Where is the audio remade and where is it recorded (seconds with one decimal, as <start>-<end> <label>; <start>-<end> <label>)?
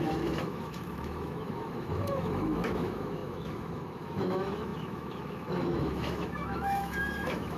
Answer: 0.0-7.6 remade